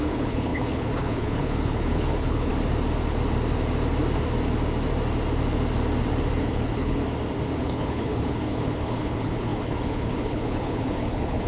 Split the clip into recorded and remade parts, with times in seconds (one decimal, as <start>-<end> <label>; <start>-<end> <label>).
0.0-2.5 remade; 2.5-6.4 recorded; 6.4-7.0 remade; 7.0-7.6 recorded; 7.6-11.5 remade